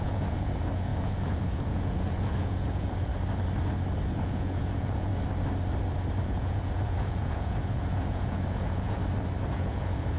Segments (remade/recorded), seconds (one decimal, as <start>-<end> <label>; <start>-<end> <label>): 0.0-3.1 remade; 3.1-4.1 recorded; 4.1-5.1 remade; 5.1-6.2 recorded; 6.2-9.0 remade; 9.0-9.5 recorded; 9.5-10.2 remade